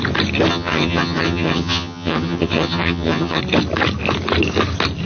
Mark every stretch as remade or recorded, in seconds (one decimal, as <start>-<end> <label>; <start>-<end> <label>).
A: 0.0-0.5 recorded; 0.5-3.4 remade; 3.4-5.1 recorded